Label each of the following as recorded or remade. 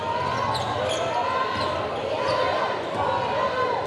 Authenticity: recorded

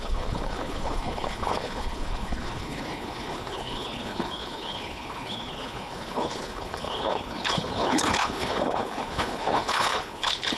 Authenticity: remade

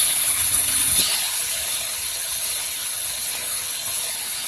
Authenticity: remade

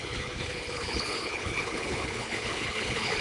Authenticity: remade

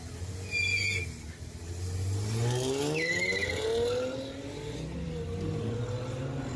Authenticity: recorded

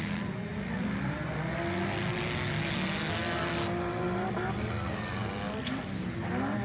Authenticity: recorded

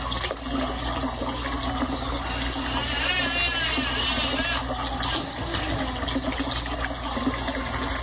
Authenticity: recorded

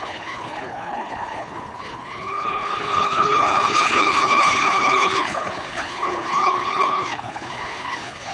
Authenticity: remade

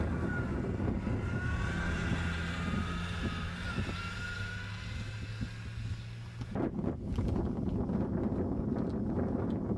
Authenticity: recorded